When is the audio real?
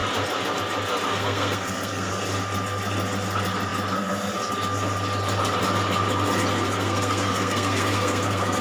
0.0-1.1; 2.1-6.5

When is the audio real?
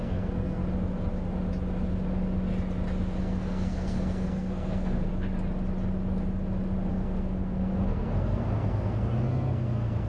0.6-3.2; 5.1-6.9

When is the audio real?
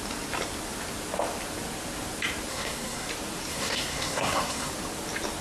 0.0-2.5; 3.1-3.5; 4.7-5.4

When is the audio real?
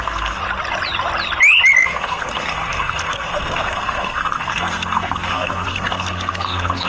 0.4-1.8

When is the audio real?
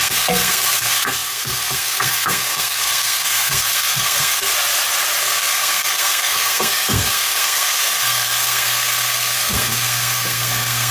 4.5-5.2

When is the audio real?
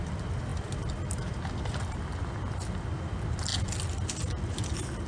0.0-5.1